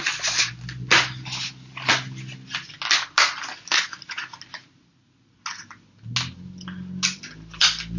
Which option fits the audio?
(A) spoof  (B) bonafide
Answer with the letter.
B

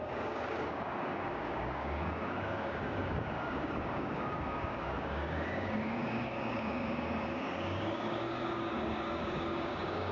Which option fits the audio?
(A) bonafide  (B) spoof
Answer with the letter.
B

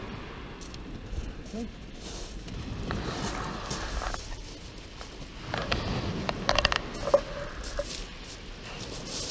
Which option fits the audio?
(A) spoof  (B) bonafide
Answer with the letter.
B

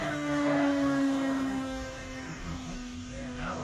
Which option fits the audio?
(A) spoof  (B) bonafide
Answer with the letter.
A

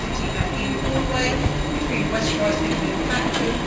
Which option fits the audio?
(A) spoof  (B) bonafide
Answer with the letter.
B